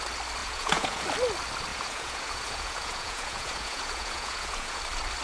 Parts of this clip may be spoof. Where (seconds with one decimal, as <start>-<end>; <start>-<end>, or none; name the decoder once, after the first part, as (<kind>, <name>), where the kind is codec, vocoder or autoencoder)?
0.4-1.0 (vocoder, Vocos); 1.7-4.8